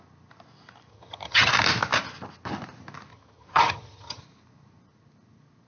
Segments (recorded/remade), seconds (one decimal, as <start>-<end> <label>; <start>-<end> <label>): 0.0-0.9 recorded; 0.9-1.5 remade; 1.5-3.1 recorded; 3.1-4.2 remade; 4.2-5.7 recorded